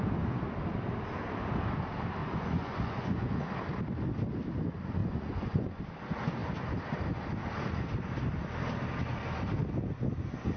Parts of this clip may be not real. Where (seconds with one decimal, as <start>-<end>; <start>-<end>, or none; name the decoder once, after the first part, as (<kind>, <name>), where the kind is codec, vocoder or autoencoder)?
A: 2.2-3.4 (vocoder, Vocos); 5.0-5.8